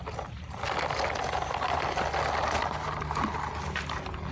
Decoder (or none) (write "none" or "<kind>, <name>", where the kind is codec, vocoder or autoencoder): none